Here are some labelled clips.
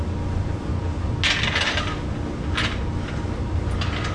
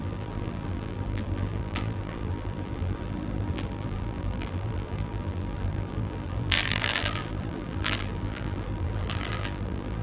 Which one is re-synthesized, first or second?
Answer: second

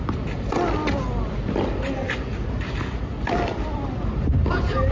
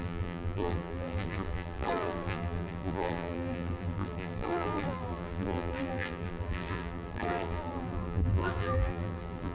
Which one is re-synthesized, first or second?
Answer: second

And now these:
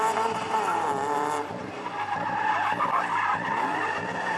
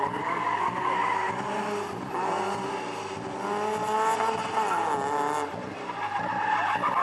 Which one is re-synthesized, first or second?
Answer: first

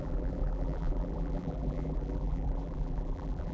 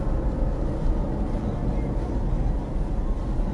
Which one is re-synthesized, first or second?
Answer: first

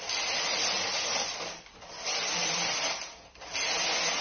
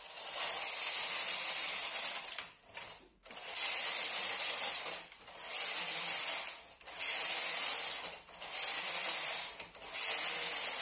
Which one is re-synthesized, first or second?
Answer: second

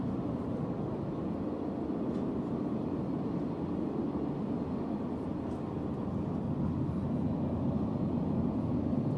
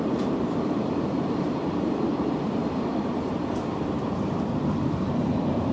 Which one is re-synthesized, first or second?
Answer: second